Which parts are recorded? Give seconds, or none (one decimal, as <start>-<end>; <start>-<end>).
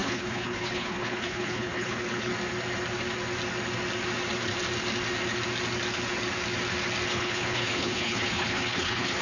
2.3-7.1